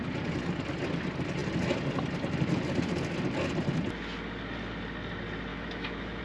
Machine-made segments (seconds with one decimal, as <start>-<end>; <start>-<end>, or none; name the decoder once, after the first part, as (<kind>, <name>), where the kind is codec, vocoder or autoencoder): 5.5-6.2 (autoencoder, DAC-VAE)